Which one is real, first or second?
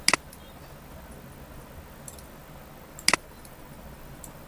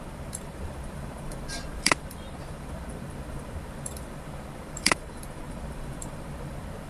first